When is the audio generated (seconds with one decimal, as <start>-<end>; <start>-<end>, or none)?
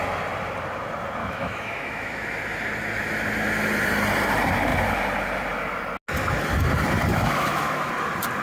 1.2-2.3; 7.1-7.9